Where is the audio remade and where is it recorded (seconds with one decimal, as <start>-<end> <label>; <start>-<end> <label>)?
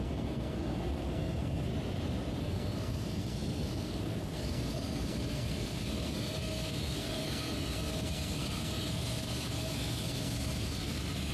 0.0-1.7 remade; 1.7-2.4 recorded; 2.4-11.3 remade